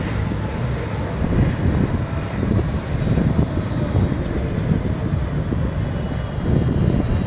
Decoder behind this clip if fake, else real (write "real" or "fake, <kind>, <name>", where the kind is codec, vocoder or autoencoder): real